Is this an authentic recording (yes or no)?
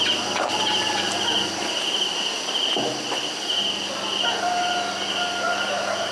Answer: yes